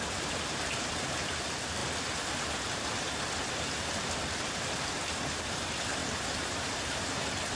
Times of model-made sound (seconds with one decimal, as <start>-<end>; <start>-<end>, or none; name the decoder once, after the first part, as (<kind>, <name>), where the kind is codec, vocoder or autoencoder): 6.0-7.6 (vocoder, BigVGAN v2)